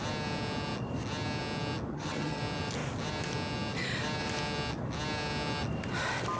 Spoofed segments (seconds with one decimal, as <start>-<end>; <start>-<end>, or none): 1.9-2.4